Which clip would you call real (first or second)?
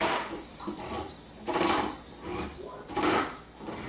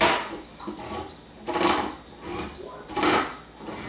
second